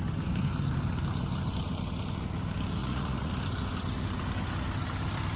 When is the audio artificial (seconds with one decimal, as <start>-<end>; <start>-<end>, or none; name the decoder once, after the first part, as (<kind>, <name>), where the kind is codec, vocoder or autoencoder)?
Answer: 2.8-3.3 (vocoder, Vocos)